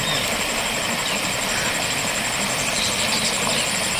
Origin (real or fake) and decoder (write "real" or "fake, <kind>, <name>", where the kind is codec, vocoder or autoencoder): real